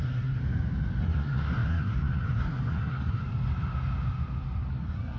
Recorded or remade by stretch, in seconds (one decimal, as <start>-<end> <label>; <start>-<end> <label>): 0.0-0.4 remade; 0.4-1.0 recorded; 1.0-3.2 remade; 3.2-4.7 recorded; 4.7-5.2 remade